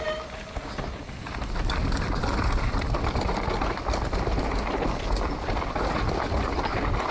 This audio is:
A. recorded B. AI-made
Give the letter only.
A